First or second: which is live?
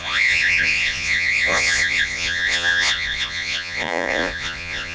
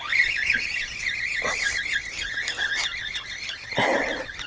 second